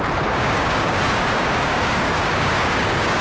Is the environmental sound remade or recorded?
remade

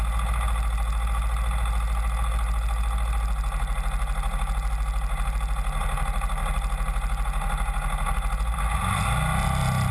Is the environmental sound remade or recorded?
recorded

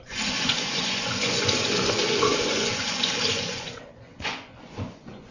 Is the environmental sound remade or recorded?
remade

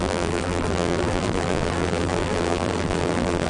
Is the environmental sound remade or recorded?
remade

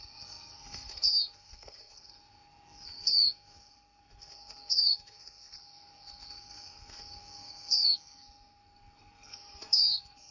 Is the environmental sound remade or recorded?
remade